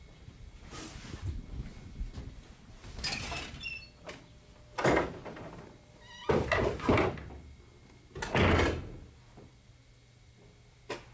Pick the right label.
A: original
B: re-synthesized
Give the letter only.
A